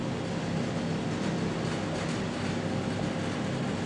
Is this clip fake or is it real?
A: real